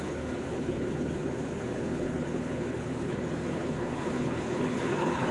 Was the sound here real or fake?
fake